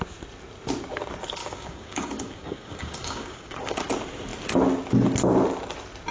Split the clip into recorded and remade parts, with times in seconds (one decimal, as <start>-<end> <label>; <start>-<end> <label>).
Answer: 0.0-1.4 recorded; 1.4-3.8 remade; 3.8-6.1 recorded